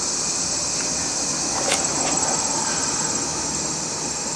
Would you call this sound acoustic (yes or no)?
yes